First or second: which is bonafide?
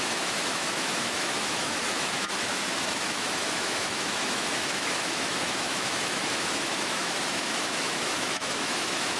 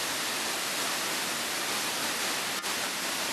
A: second